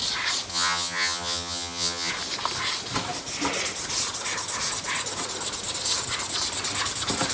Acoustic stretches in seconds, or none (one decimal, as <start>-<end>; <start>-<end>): 0.0-0.5; 2.1-7.3